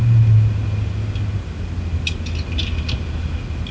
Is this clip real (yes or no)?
yes